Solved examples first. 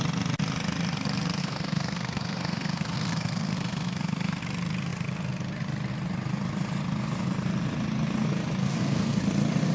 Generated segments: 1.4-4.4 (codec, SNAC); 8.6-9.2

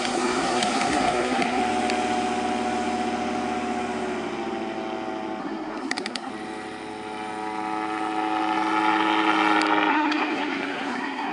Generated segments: 0.0-1.6 (codec, SNAC); 5.4-6.3; 9.9-11.3

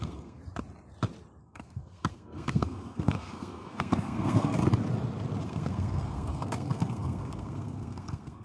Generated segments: 0.0-0.4 (codec, SNAC); 1.4-4.6; 5.4-8.4

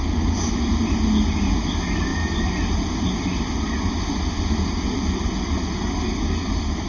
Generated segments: none

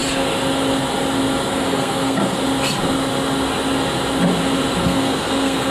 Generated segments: 1.5-2.4 (codec, SNAC); 4.8-5.7

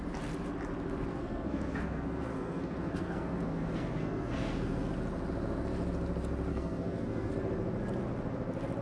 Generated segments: 1.1-4.9 (codec, SNAC); 6.5-7.3

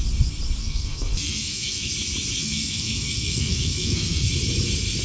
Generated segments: 0.6-1.9 (codec, SNAC); 2.4-4.3